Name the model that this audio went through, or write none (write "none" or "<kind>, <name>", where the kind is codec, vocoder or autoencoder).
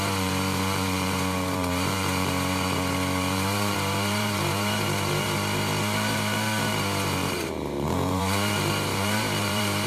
vocoder, BigVGAN v2